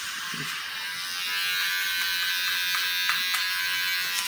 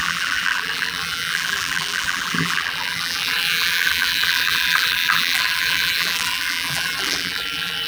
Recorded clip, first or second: first